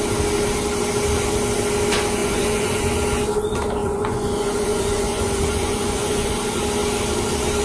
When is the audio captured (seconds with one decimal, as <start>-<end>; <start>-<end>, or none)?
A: 0.0-2.2; 2.9-3.8; 6.3-7.6